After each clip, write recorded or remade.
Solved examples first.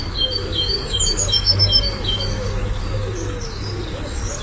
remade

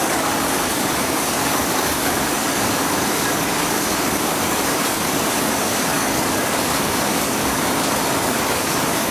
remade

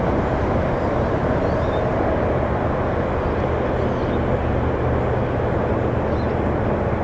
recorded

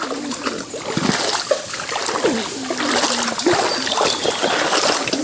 recorded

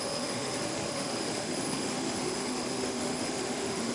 remade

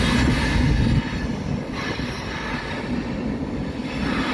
recorded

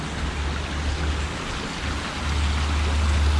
recorded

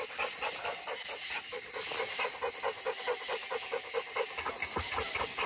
recorded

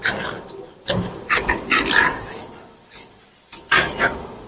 remade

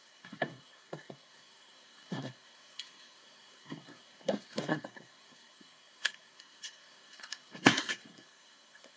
remade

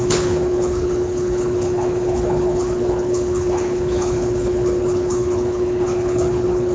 remade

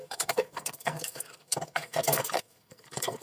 remade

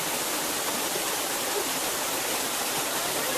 recorded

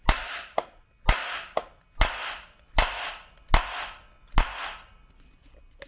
recorded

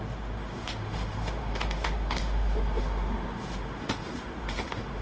remade